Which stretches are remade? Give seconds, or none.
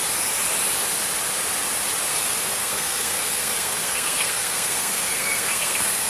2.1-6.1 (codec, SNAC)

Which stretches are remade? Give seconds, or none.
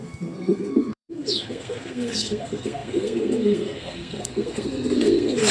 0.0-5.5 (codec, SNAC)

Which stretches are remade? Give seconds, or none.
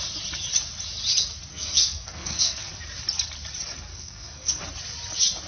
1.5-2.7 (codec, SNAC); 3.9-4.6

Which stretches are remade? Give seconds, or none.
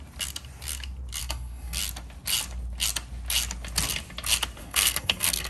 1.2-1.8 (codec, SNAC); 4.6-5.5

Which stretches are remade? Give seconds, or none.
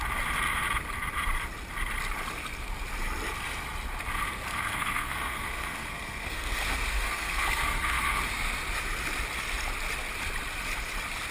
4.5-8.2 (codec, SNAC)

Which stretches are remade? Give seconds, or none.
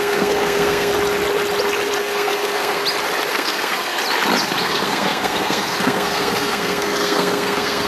0.0-0.9 (codec, SNAC); 2.0-2.8; 3.3-4.0; 4.6-7.9